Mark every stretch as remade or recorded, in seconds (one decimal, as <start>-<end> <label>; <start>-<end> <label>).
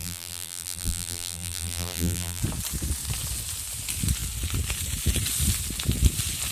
0.0-2.4 remade; 2.4-6.5 recorded